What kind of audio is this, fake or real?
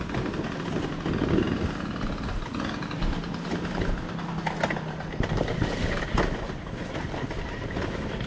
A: real